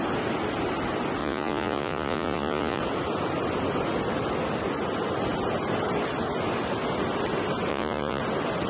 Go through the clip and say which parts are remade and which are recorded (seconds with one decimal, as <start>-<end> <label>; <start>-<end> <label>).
0.0-1.2 recorded; 1.2-2.8 remade; 2.8-7.7 recorded; 7.7-8.2 remade; 8.2-8.7 recorded